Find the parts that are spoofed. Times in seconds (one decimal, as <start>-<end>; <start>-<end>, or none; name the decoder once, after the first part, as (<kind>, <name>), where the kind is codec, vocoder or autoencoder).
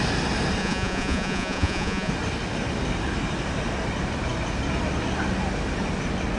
0.6-2.1 (vocoder, Vocos)